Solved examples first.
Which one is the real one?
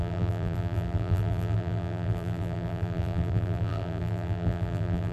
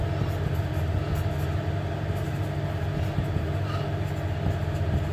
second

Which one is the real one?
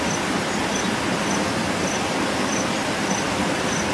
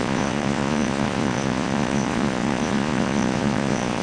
first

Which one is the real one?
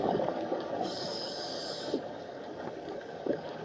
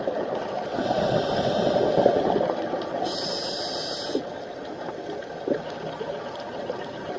second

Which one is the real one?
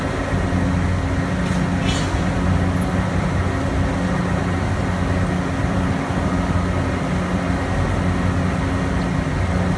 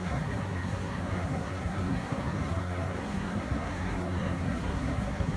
first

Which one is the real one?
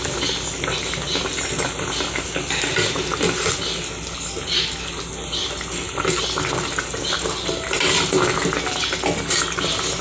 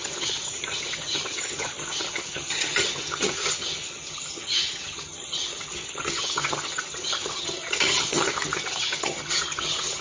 first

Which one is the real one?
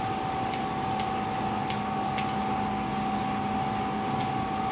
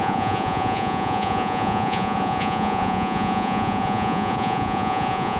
first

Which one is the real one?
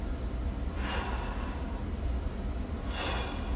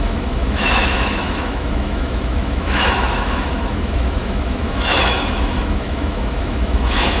first